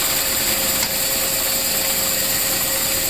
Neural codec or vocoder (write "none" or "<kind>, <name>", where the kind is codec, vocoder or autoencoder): none